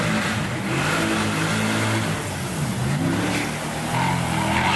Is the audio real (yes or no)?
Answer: yes